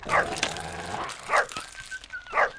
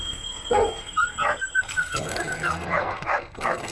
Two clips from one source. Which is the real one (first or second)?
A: first